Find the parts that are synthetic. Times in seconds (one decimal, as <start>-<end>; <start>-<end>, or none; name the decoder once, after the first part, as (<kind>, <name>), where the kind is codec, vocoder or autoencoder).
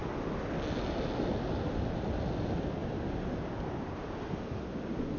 none